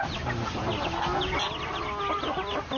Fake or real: real